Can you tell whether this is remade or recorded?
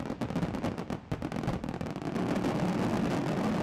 recorded